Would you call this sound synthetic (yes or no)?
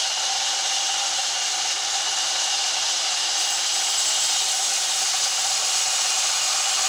no